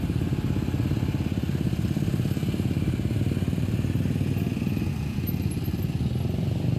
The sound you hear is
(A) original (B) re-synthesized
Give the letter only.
A